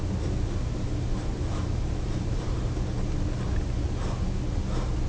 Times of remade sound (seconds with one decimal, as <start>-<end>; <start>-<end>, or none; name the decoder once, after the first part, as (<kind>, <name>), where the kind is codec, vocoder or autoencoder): 1.1-2.6 (vocoder, BigVGAN v2)

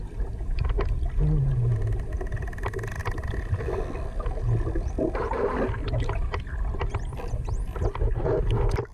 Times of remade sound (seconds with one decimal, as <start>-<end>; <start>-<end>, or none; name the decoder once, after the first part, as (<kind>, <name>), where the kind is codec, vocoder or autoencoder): none